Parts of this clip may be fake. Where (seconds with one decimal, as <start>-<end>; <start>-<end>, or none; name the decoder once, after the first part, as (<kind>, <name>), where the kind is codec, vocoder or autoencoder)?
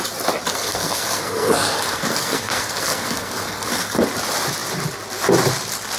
0.5-4.0 (codec, SNAC)